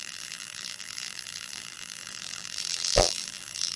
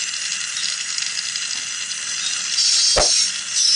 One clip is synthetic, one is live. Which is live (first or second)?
second